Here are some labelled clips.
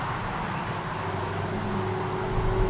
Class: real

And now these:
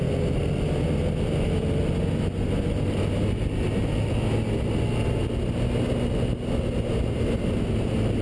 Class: real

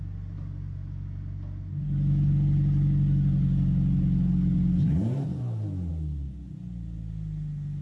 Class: real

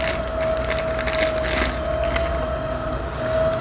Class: real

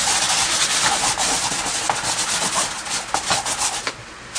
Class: real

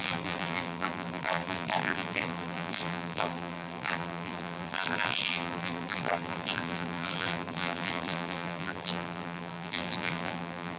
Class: fake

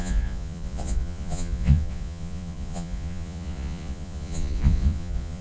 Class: fake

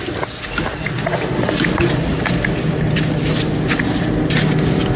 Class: real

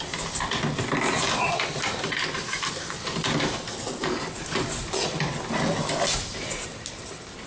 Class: real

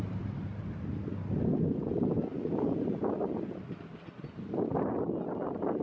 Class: real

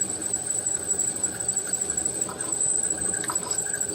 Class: fake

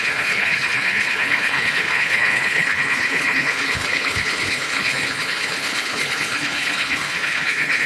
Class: fake